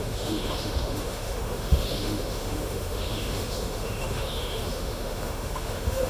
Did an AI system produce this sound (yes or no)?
yes